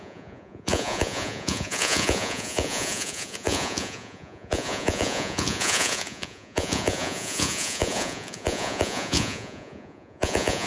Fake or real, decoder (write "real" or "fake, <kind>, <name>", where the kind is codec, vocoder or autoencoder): fake, vocoder, Vocos